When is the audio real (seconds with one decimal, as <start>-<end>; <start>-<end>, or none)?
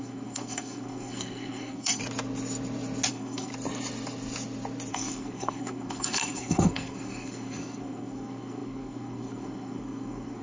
2.0-3.1; 3.5-4.9